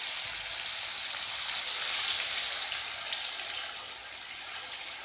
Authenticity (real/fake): real